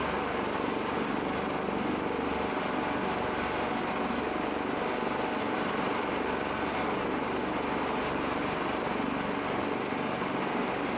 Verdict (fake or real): real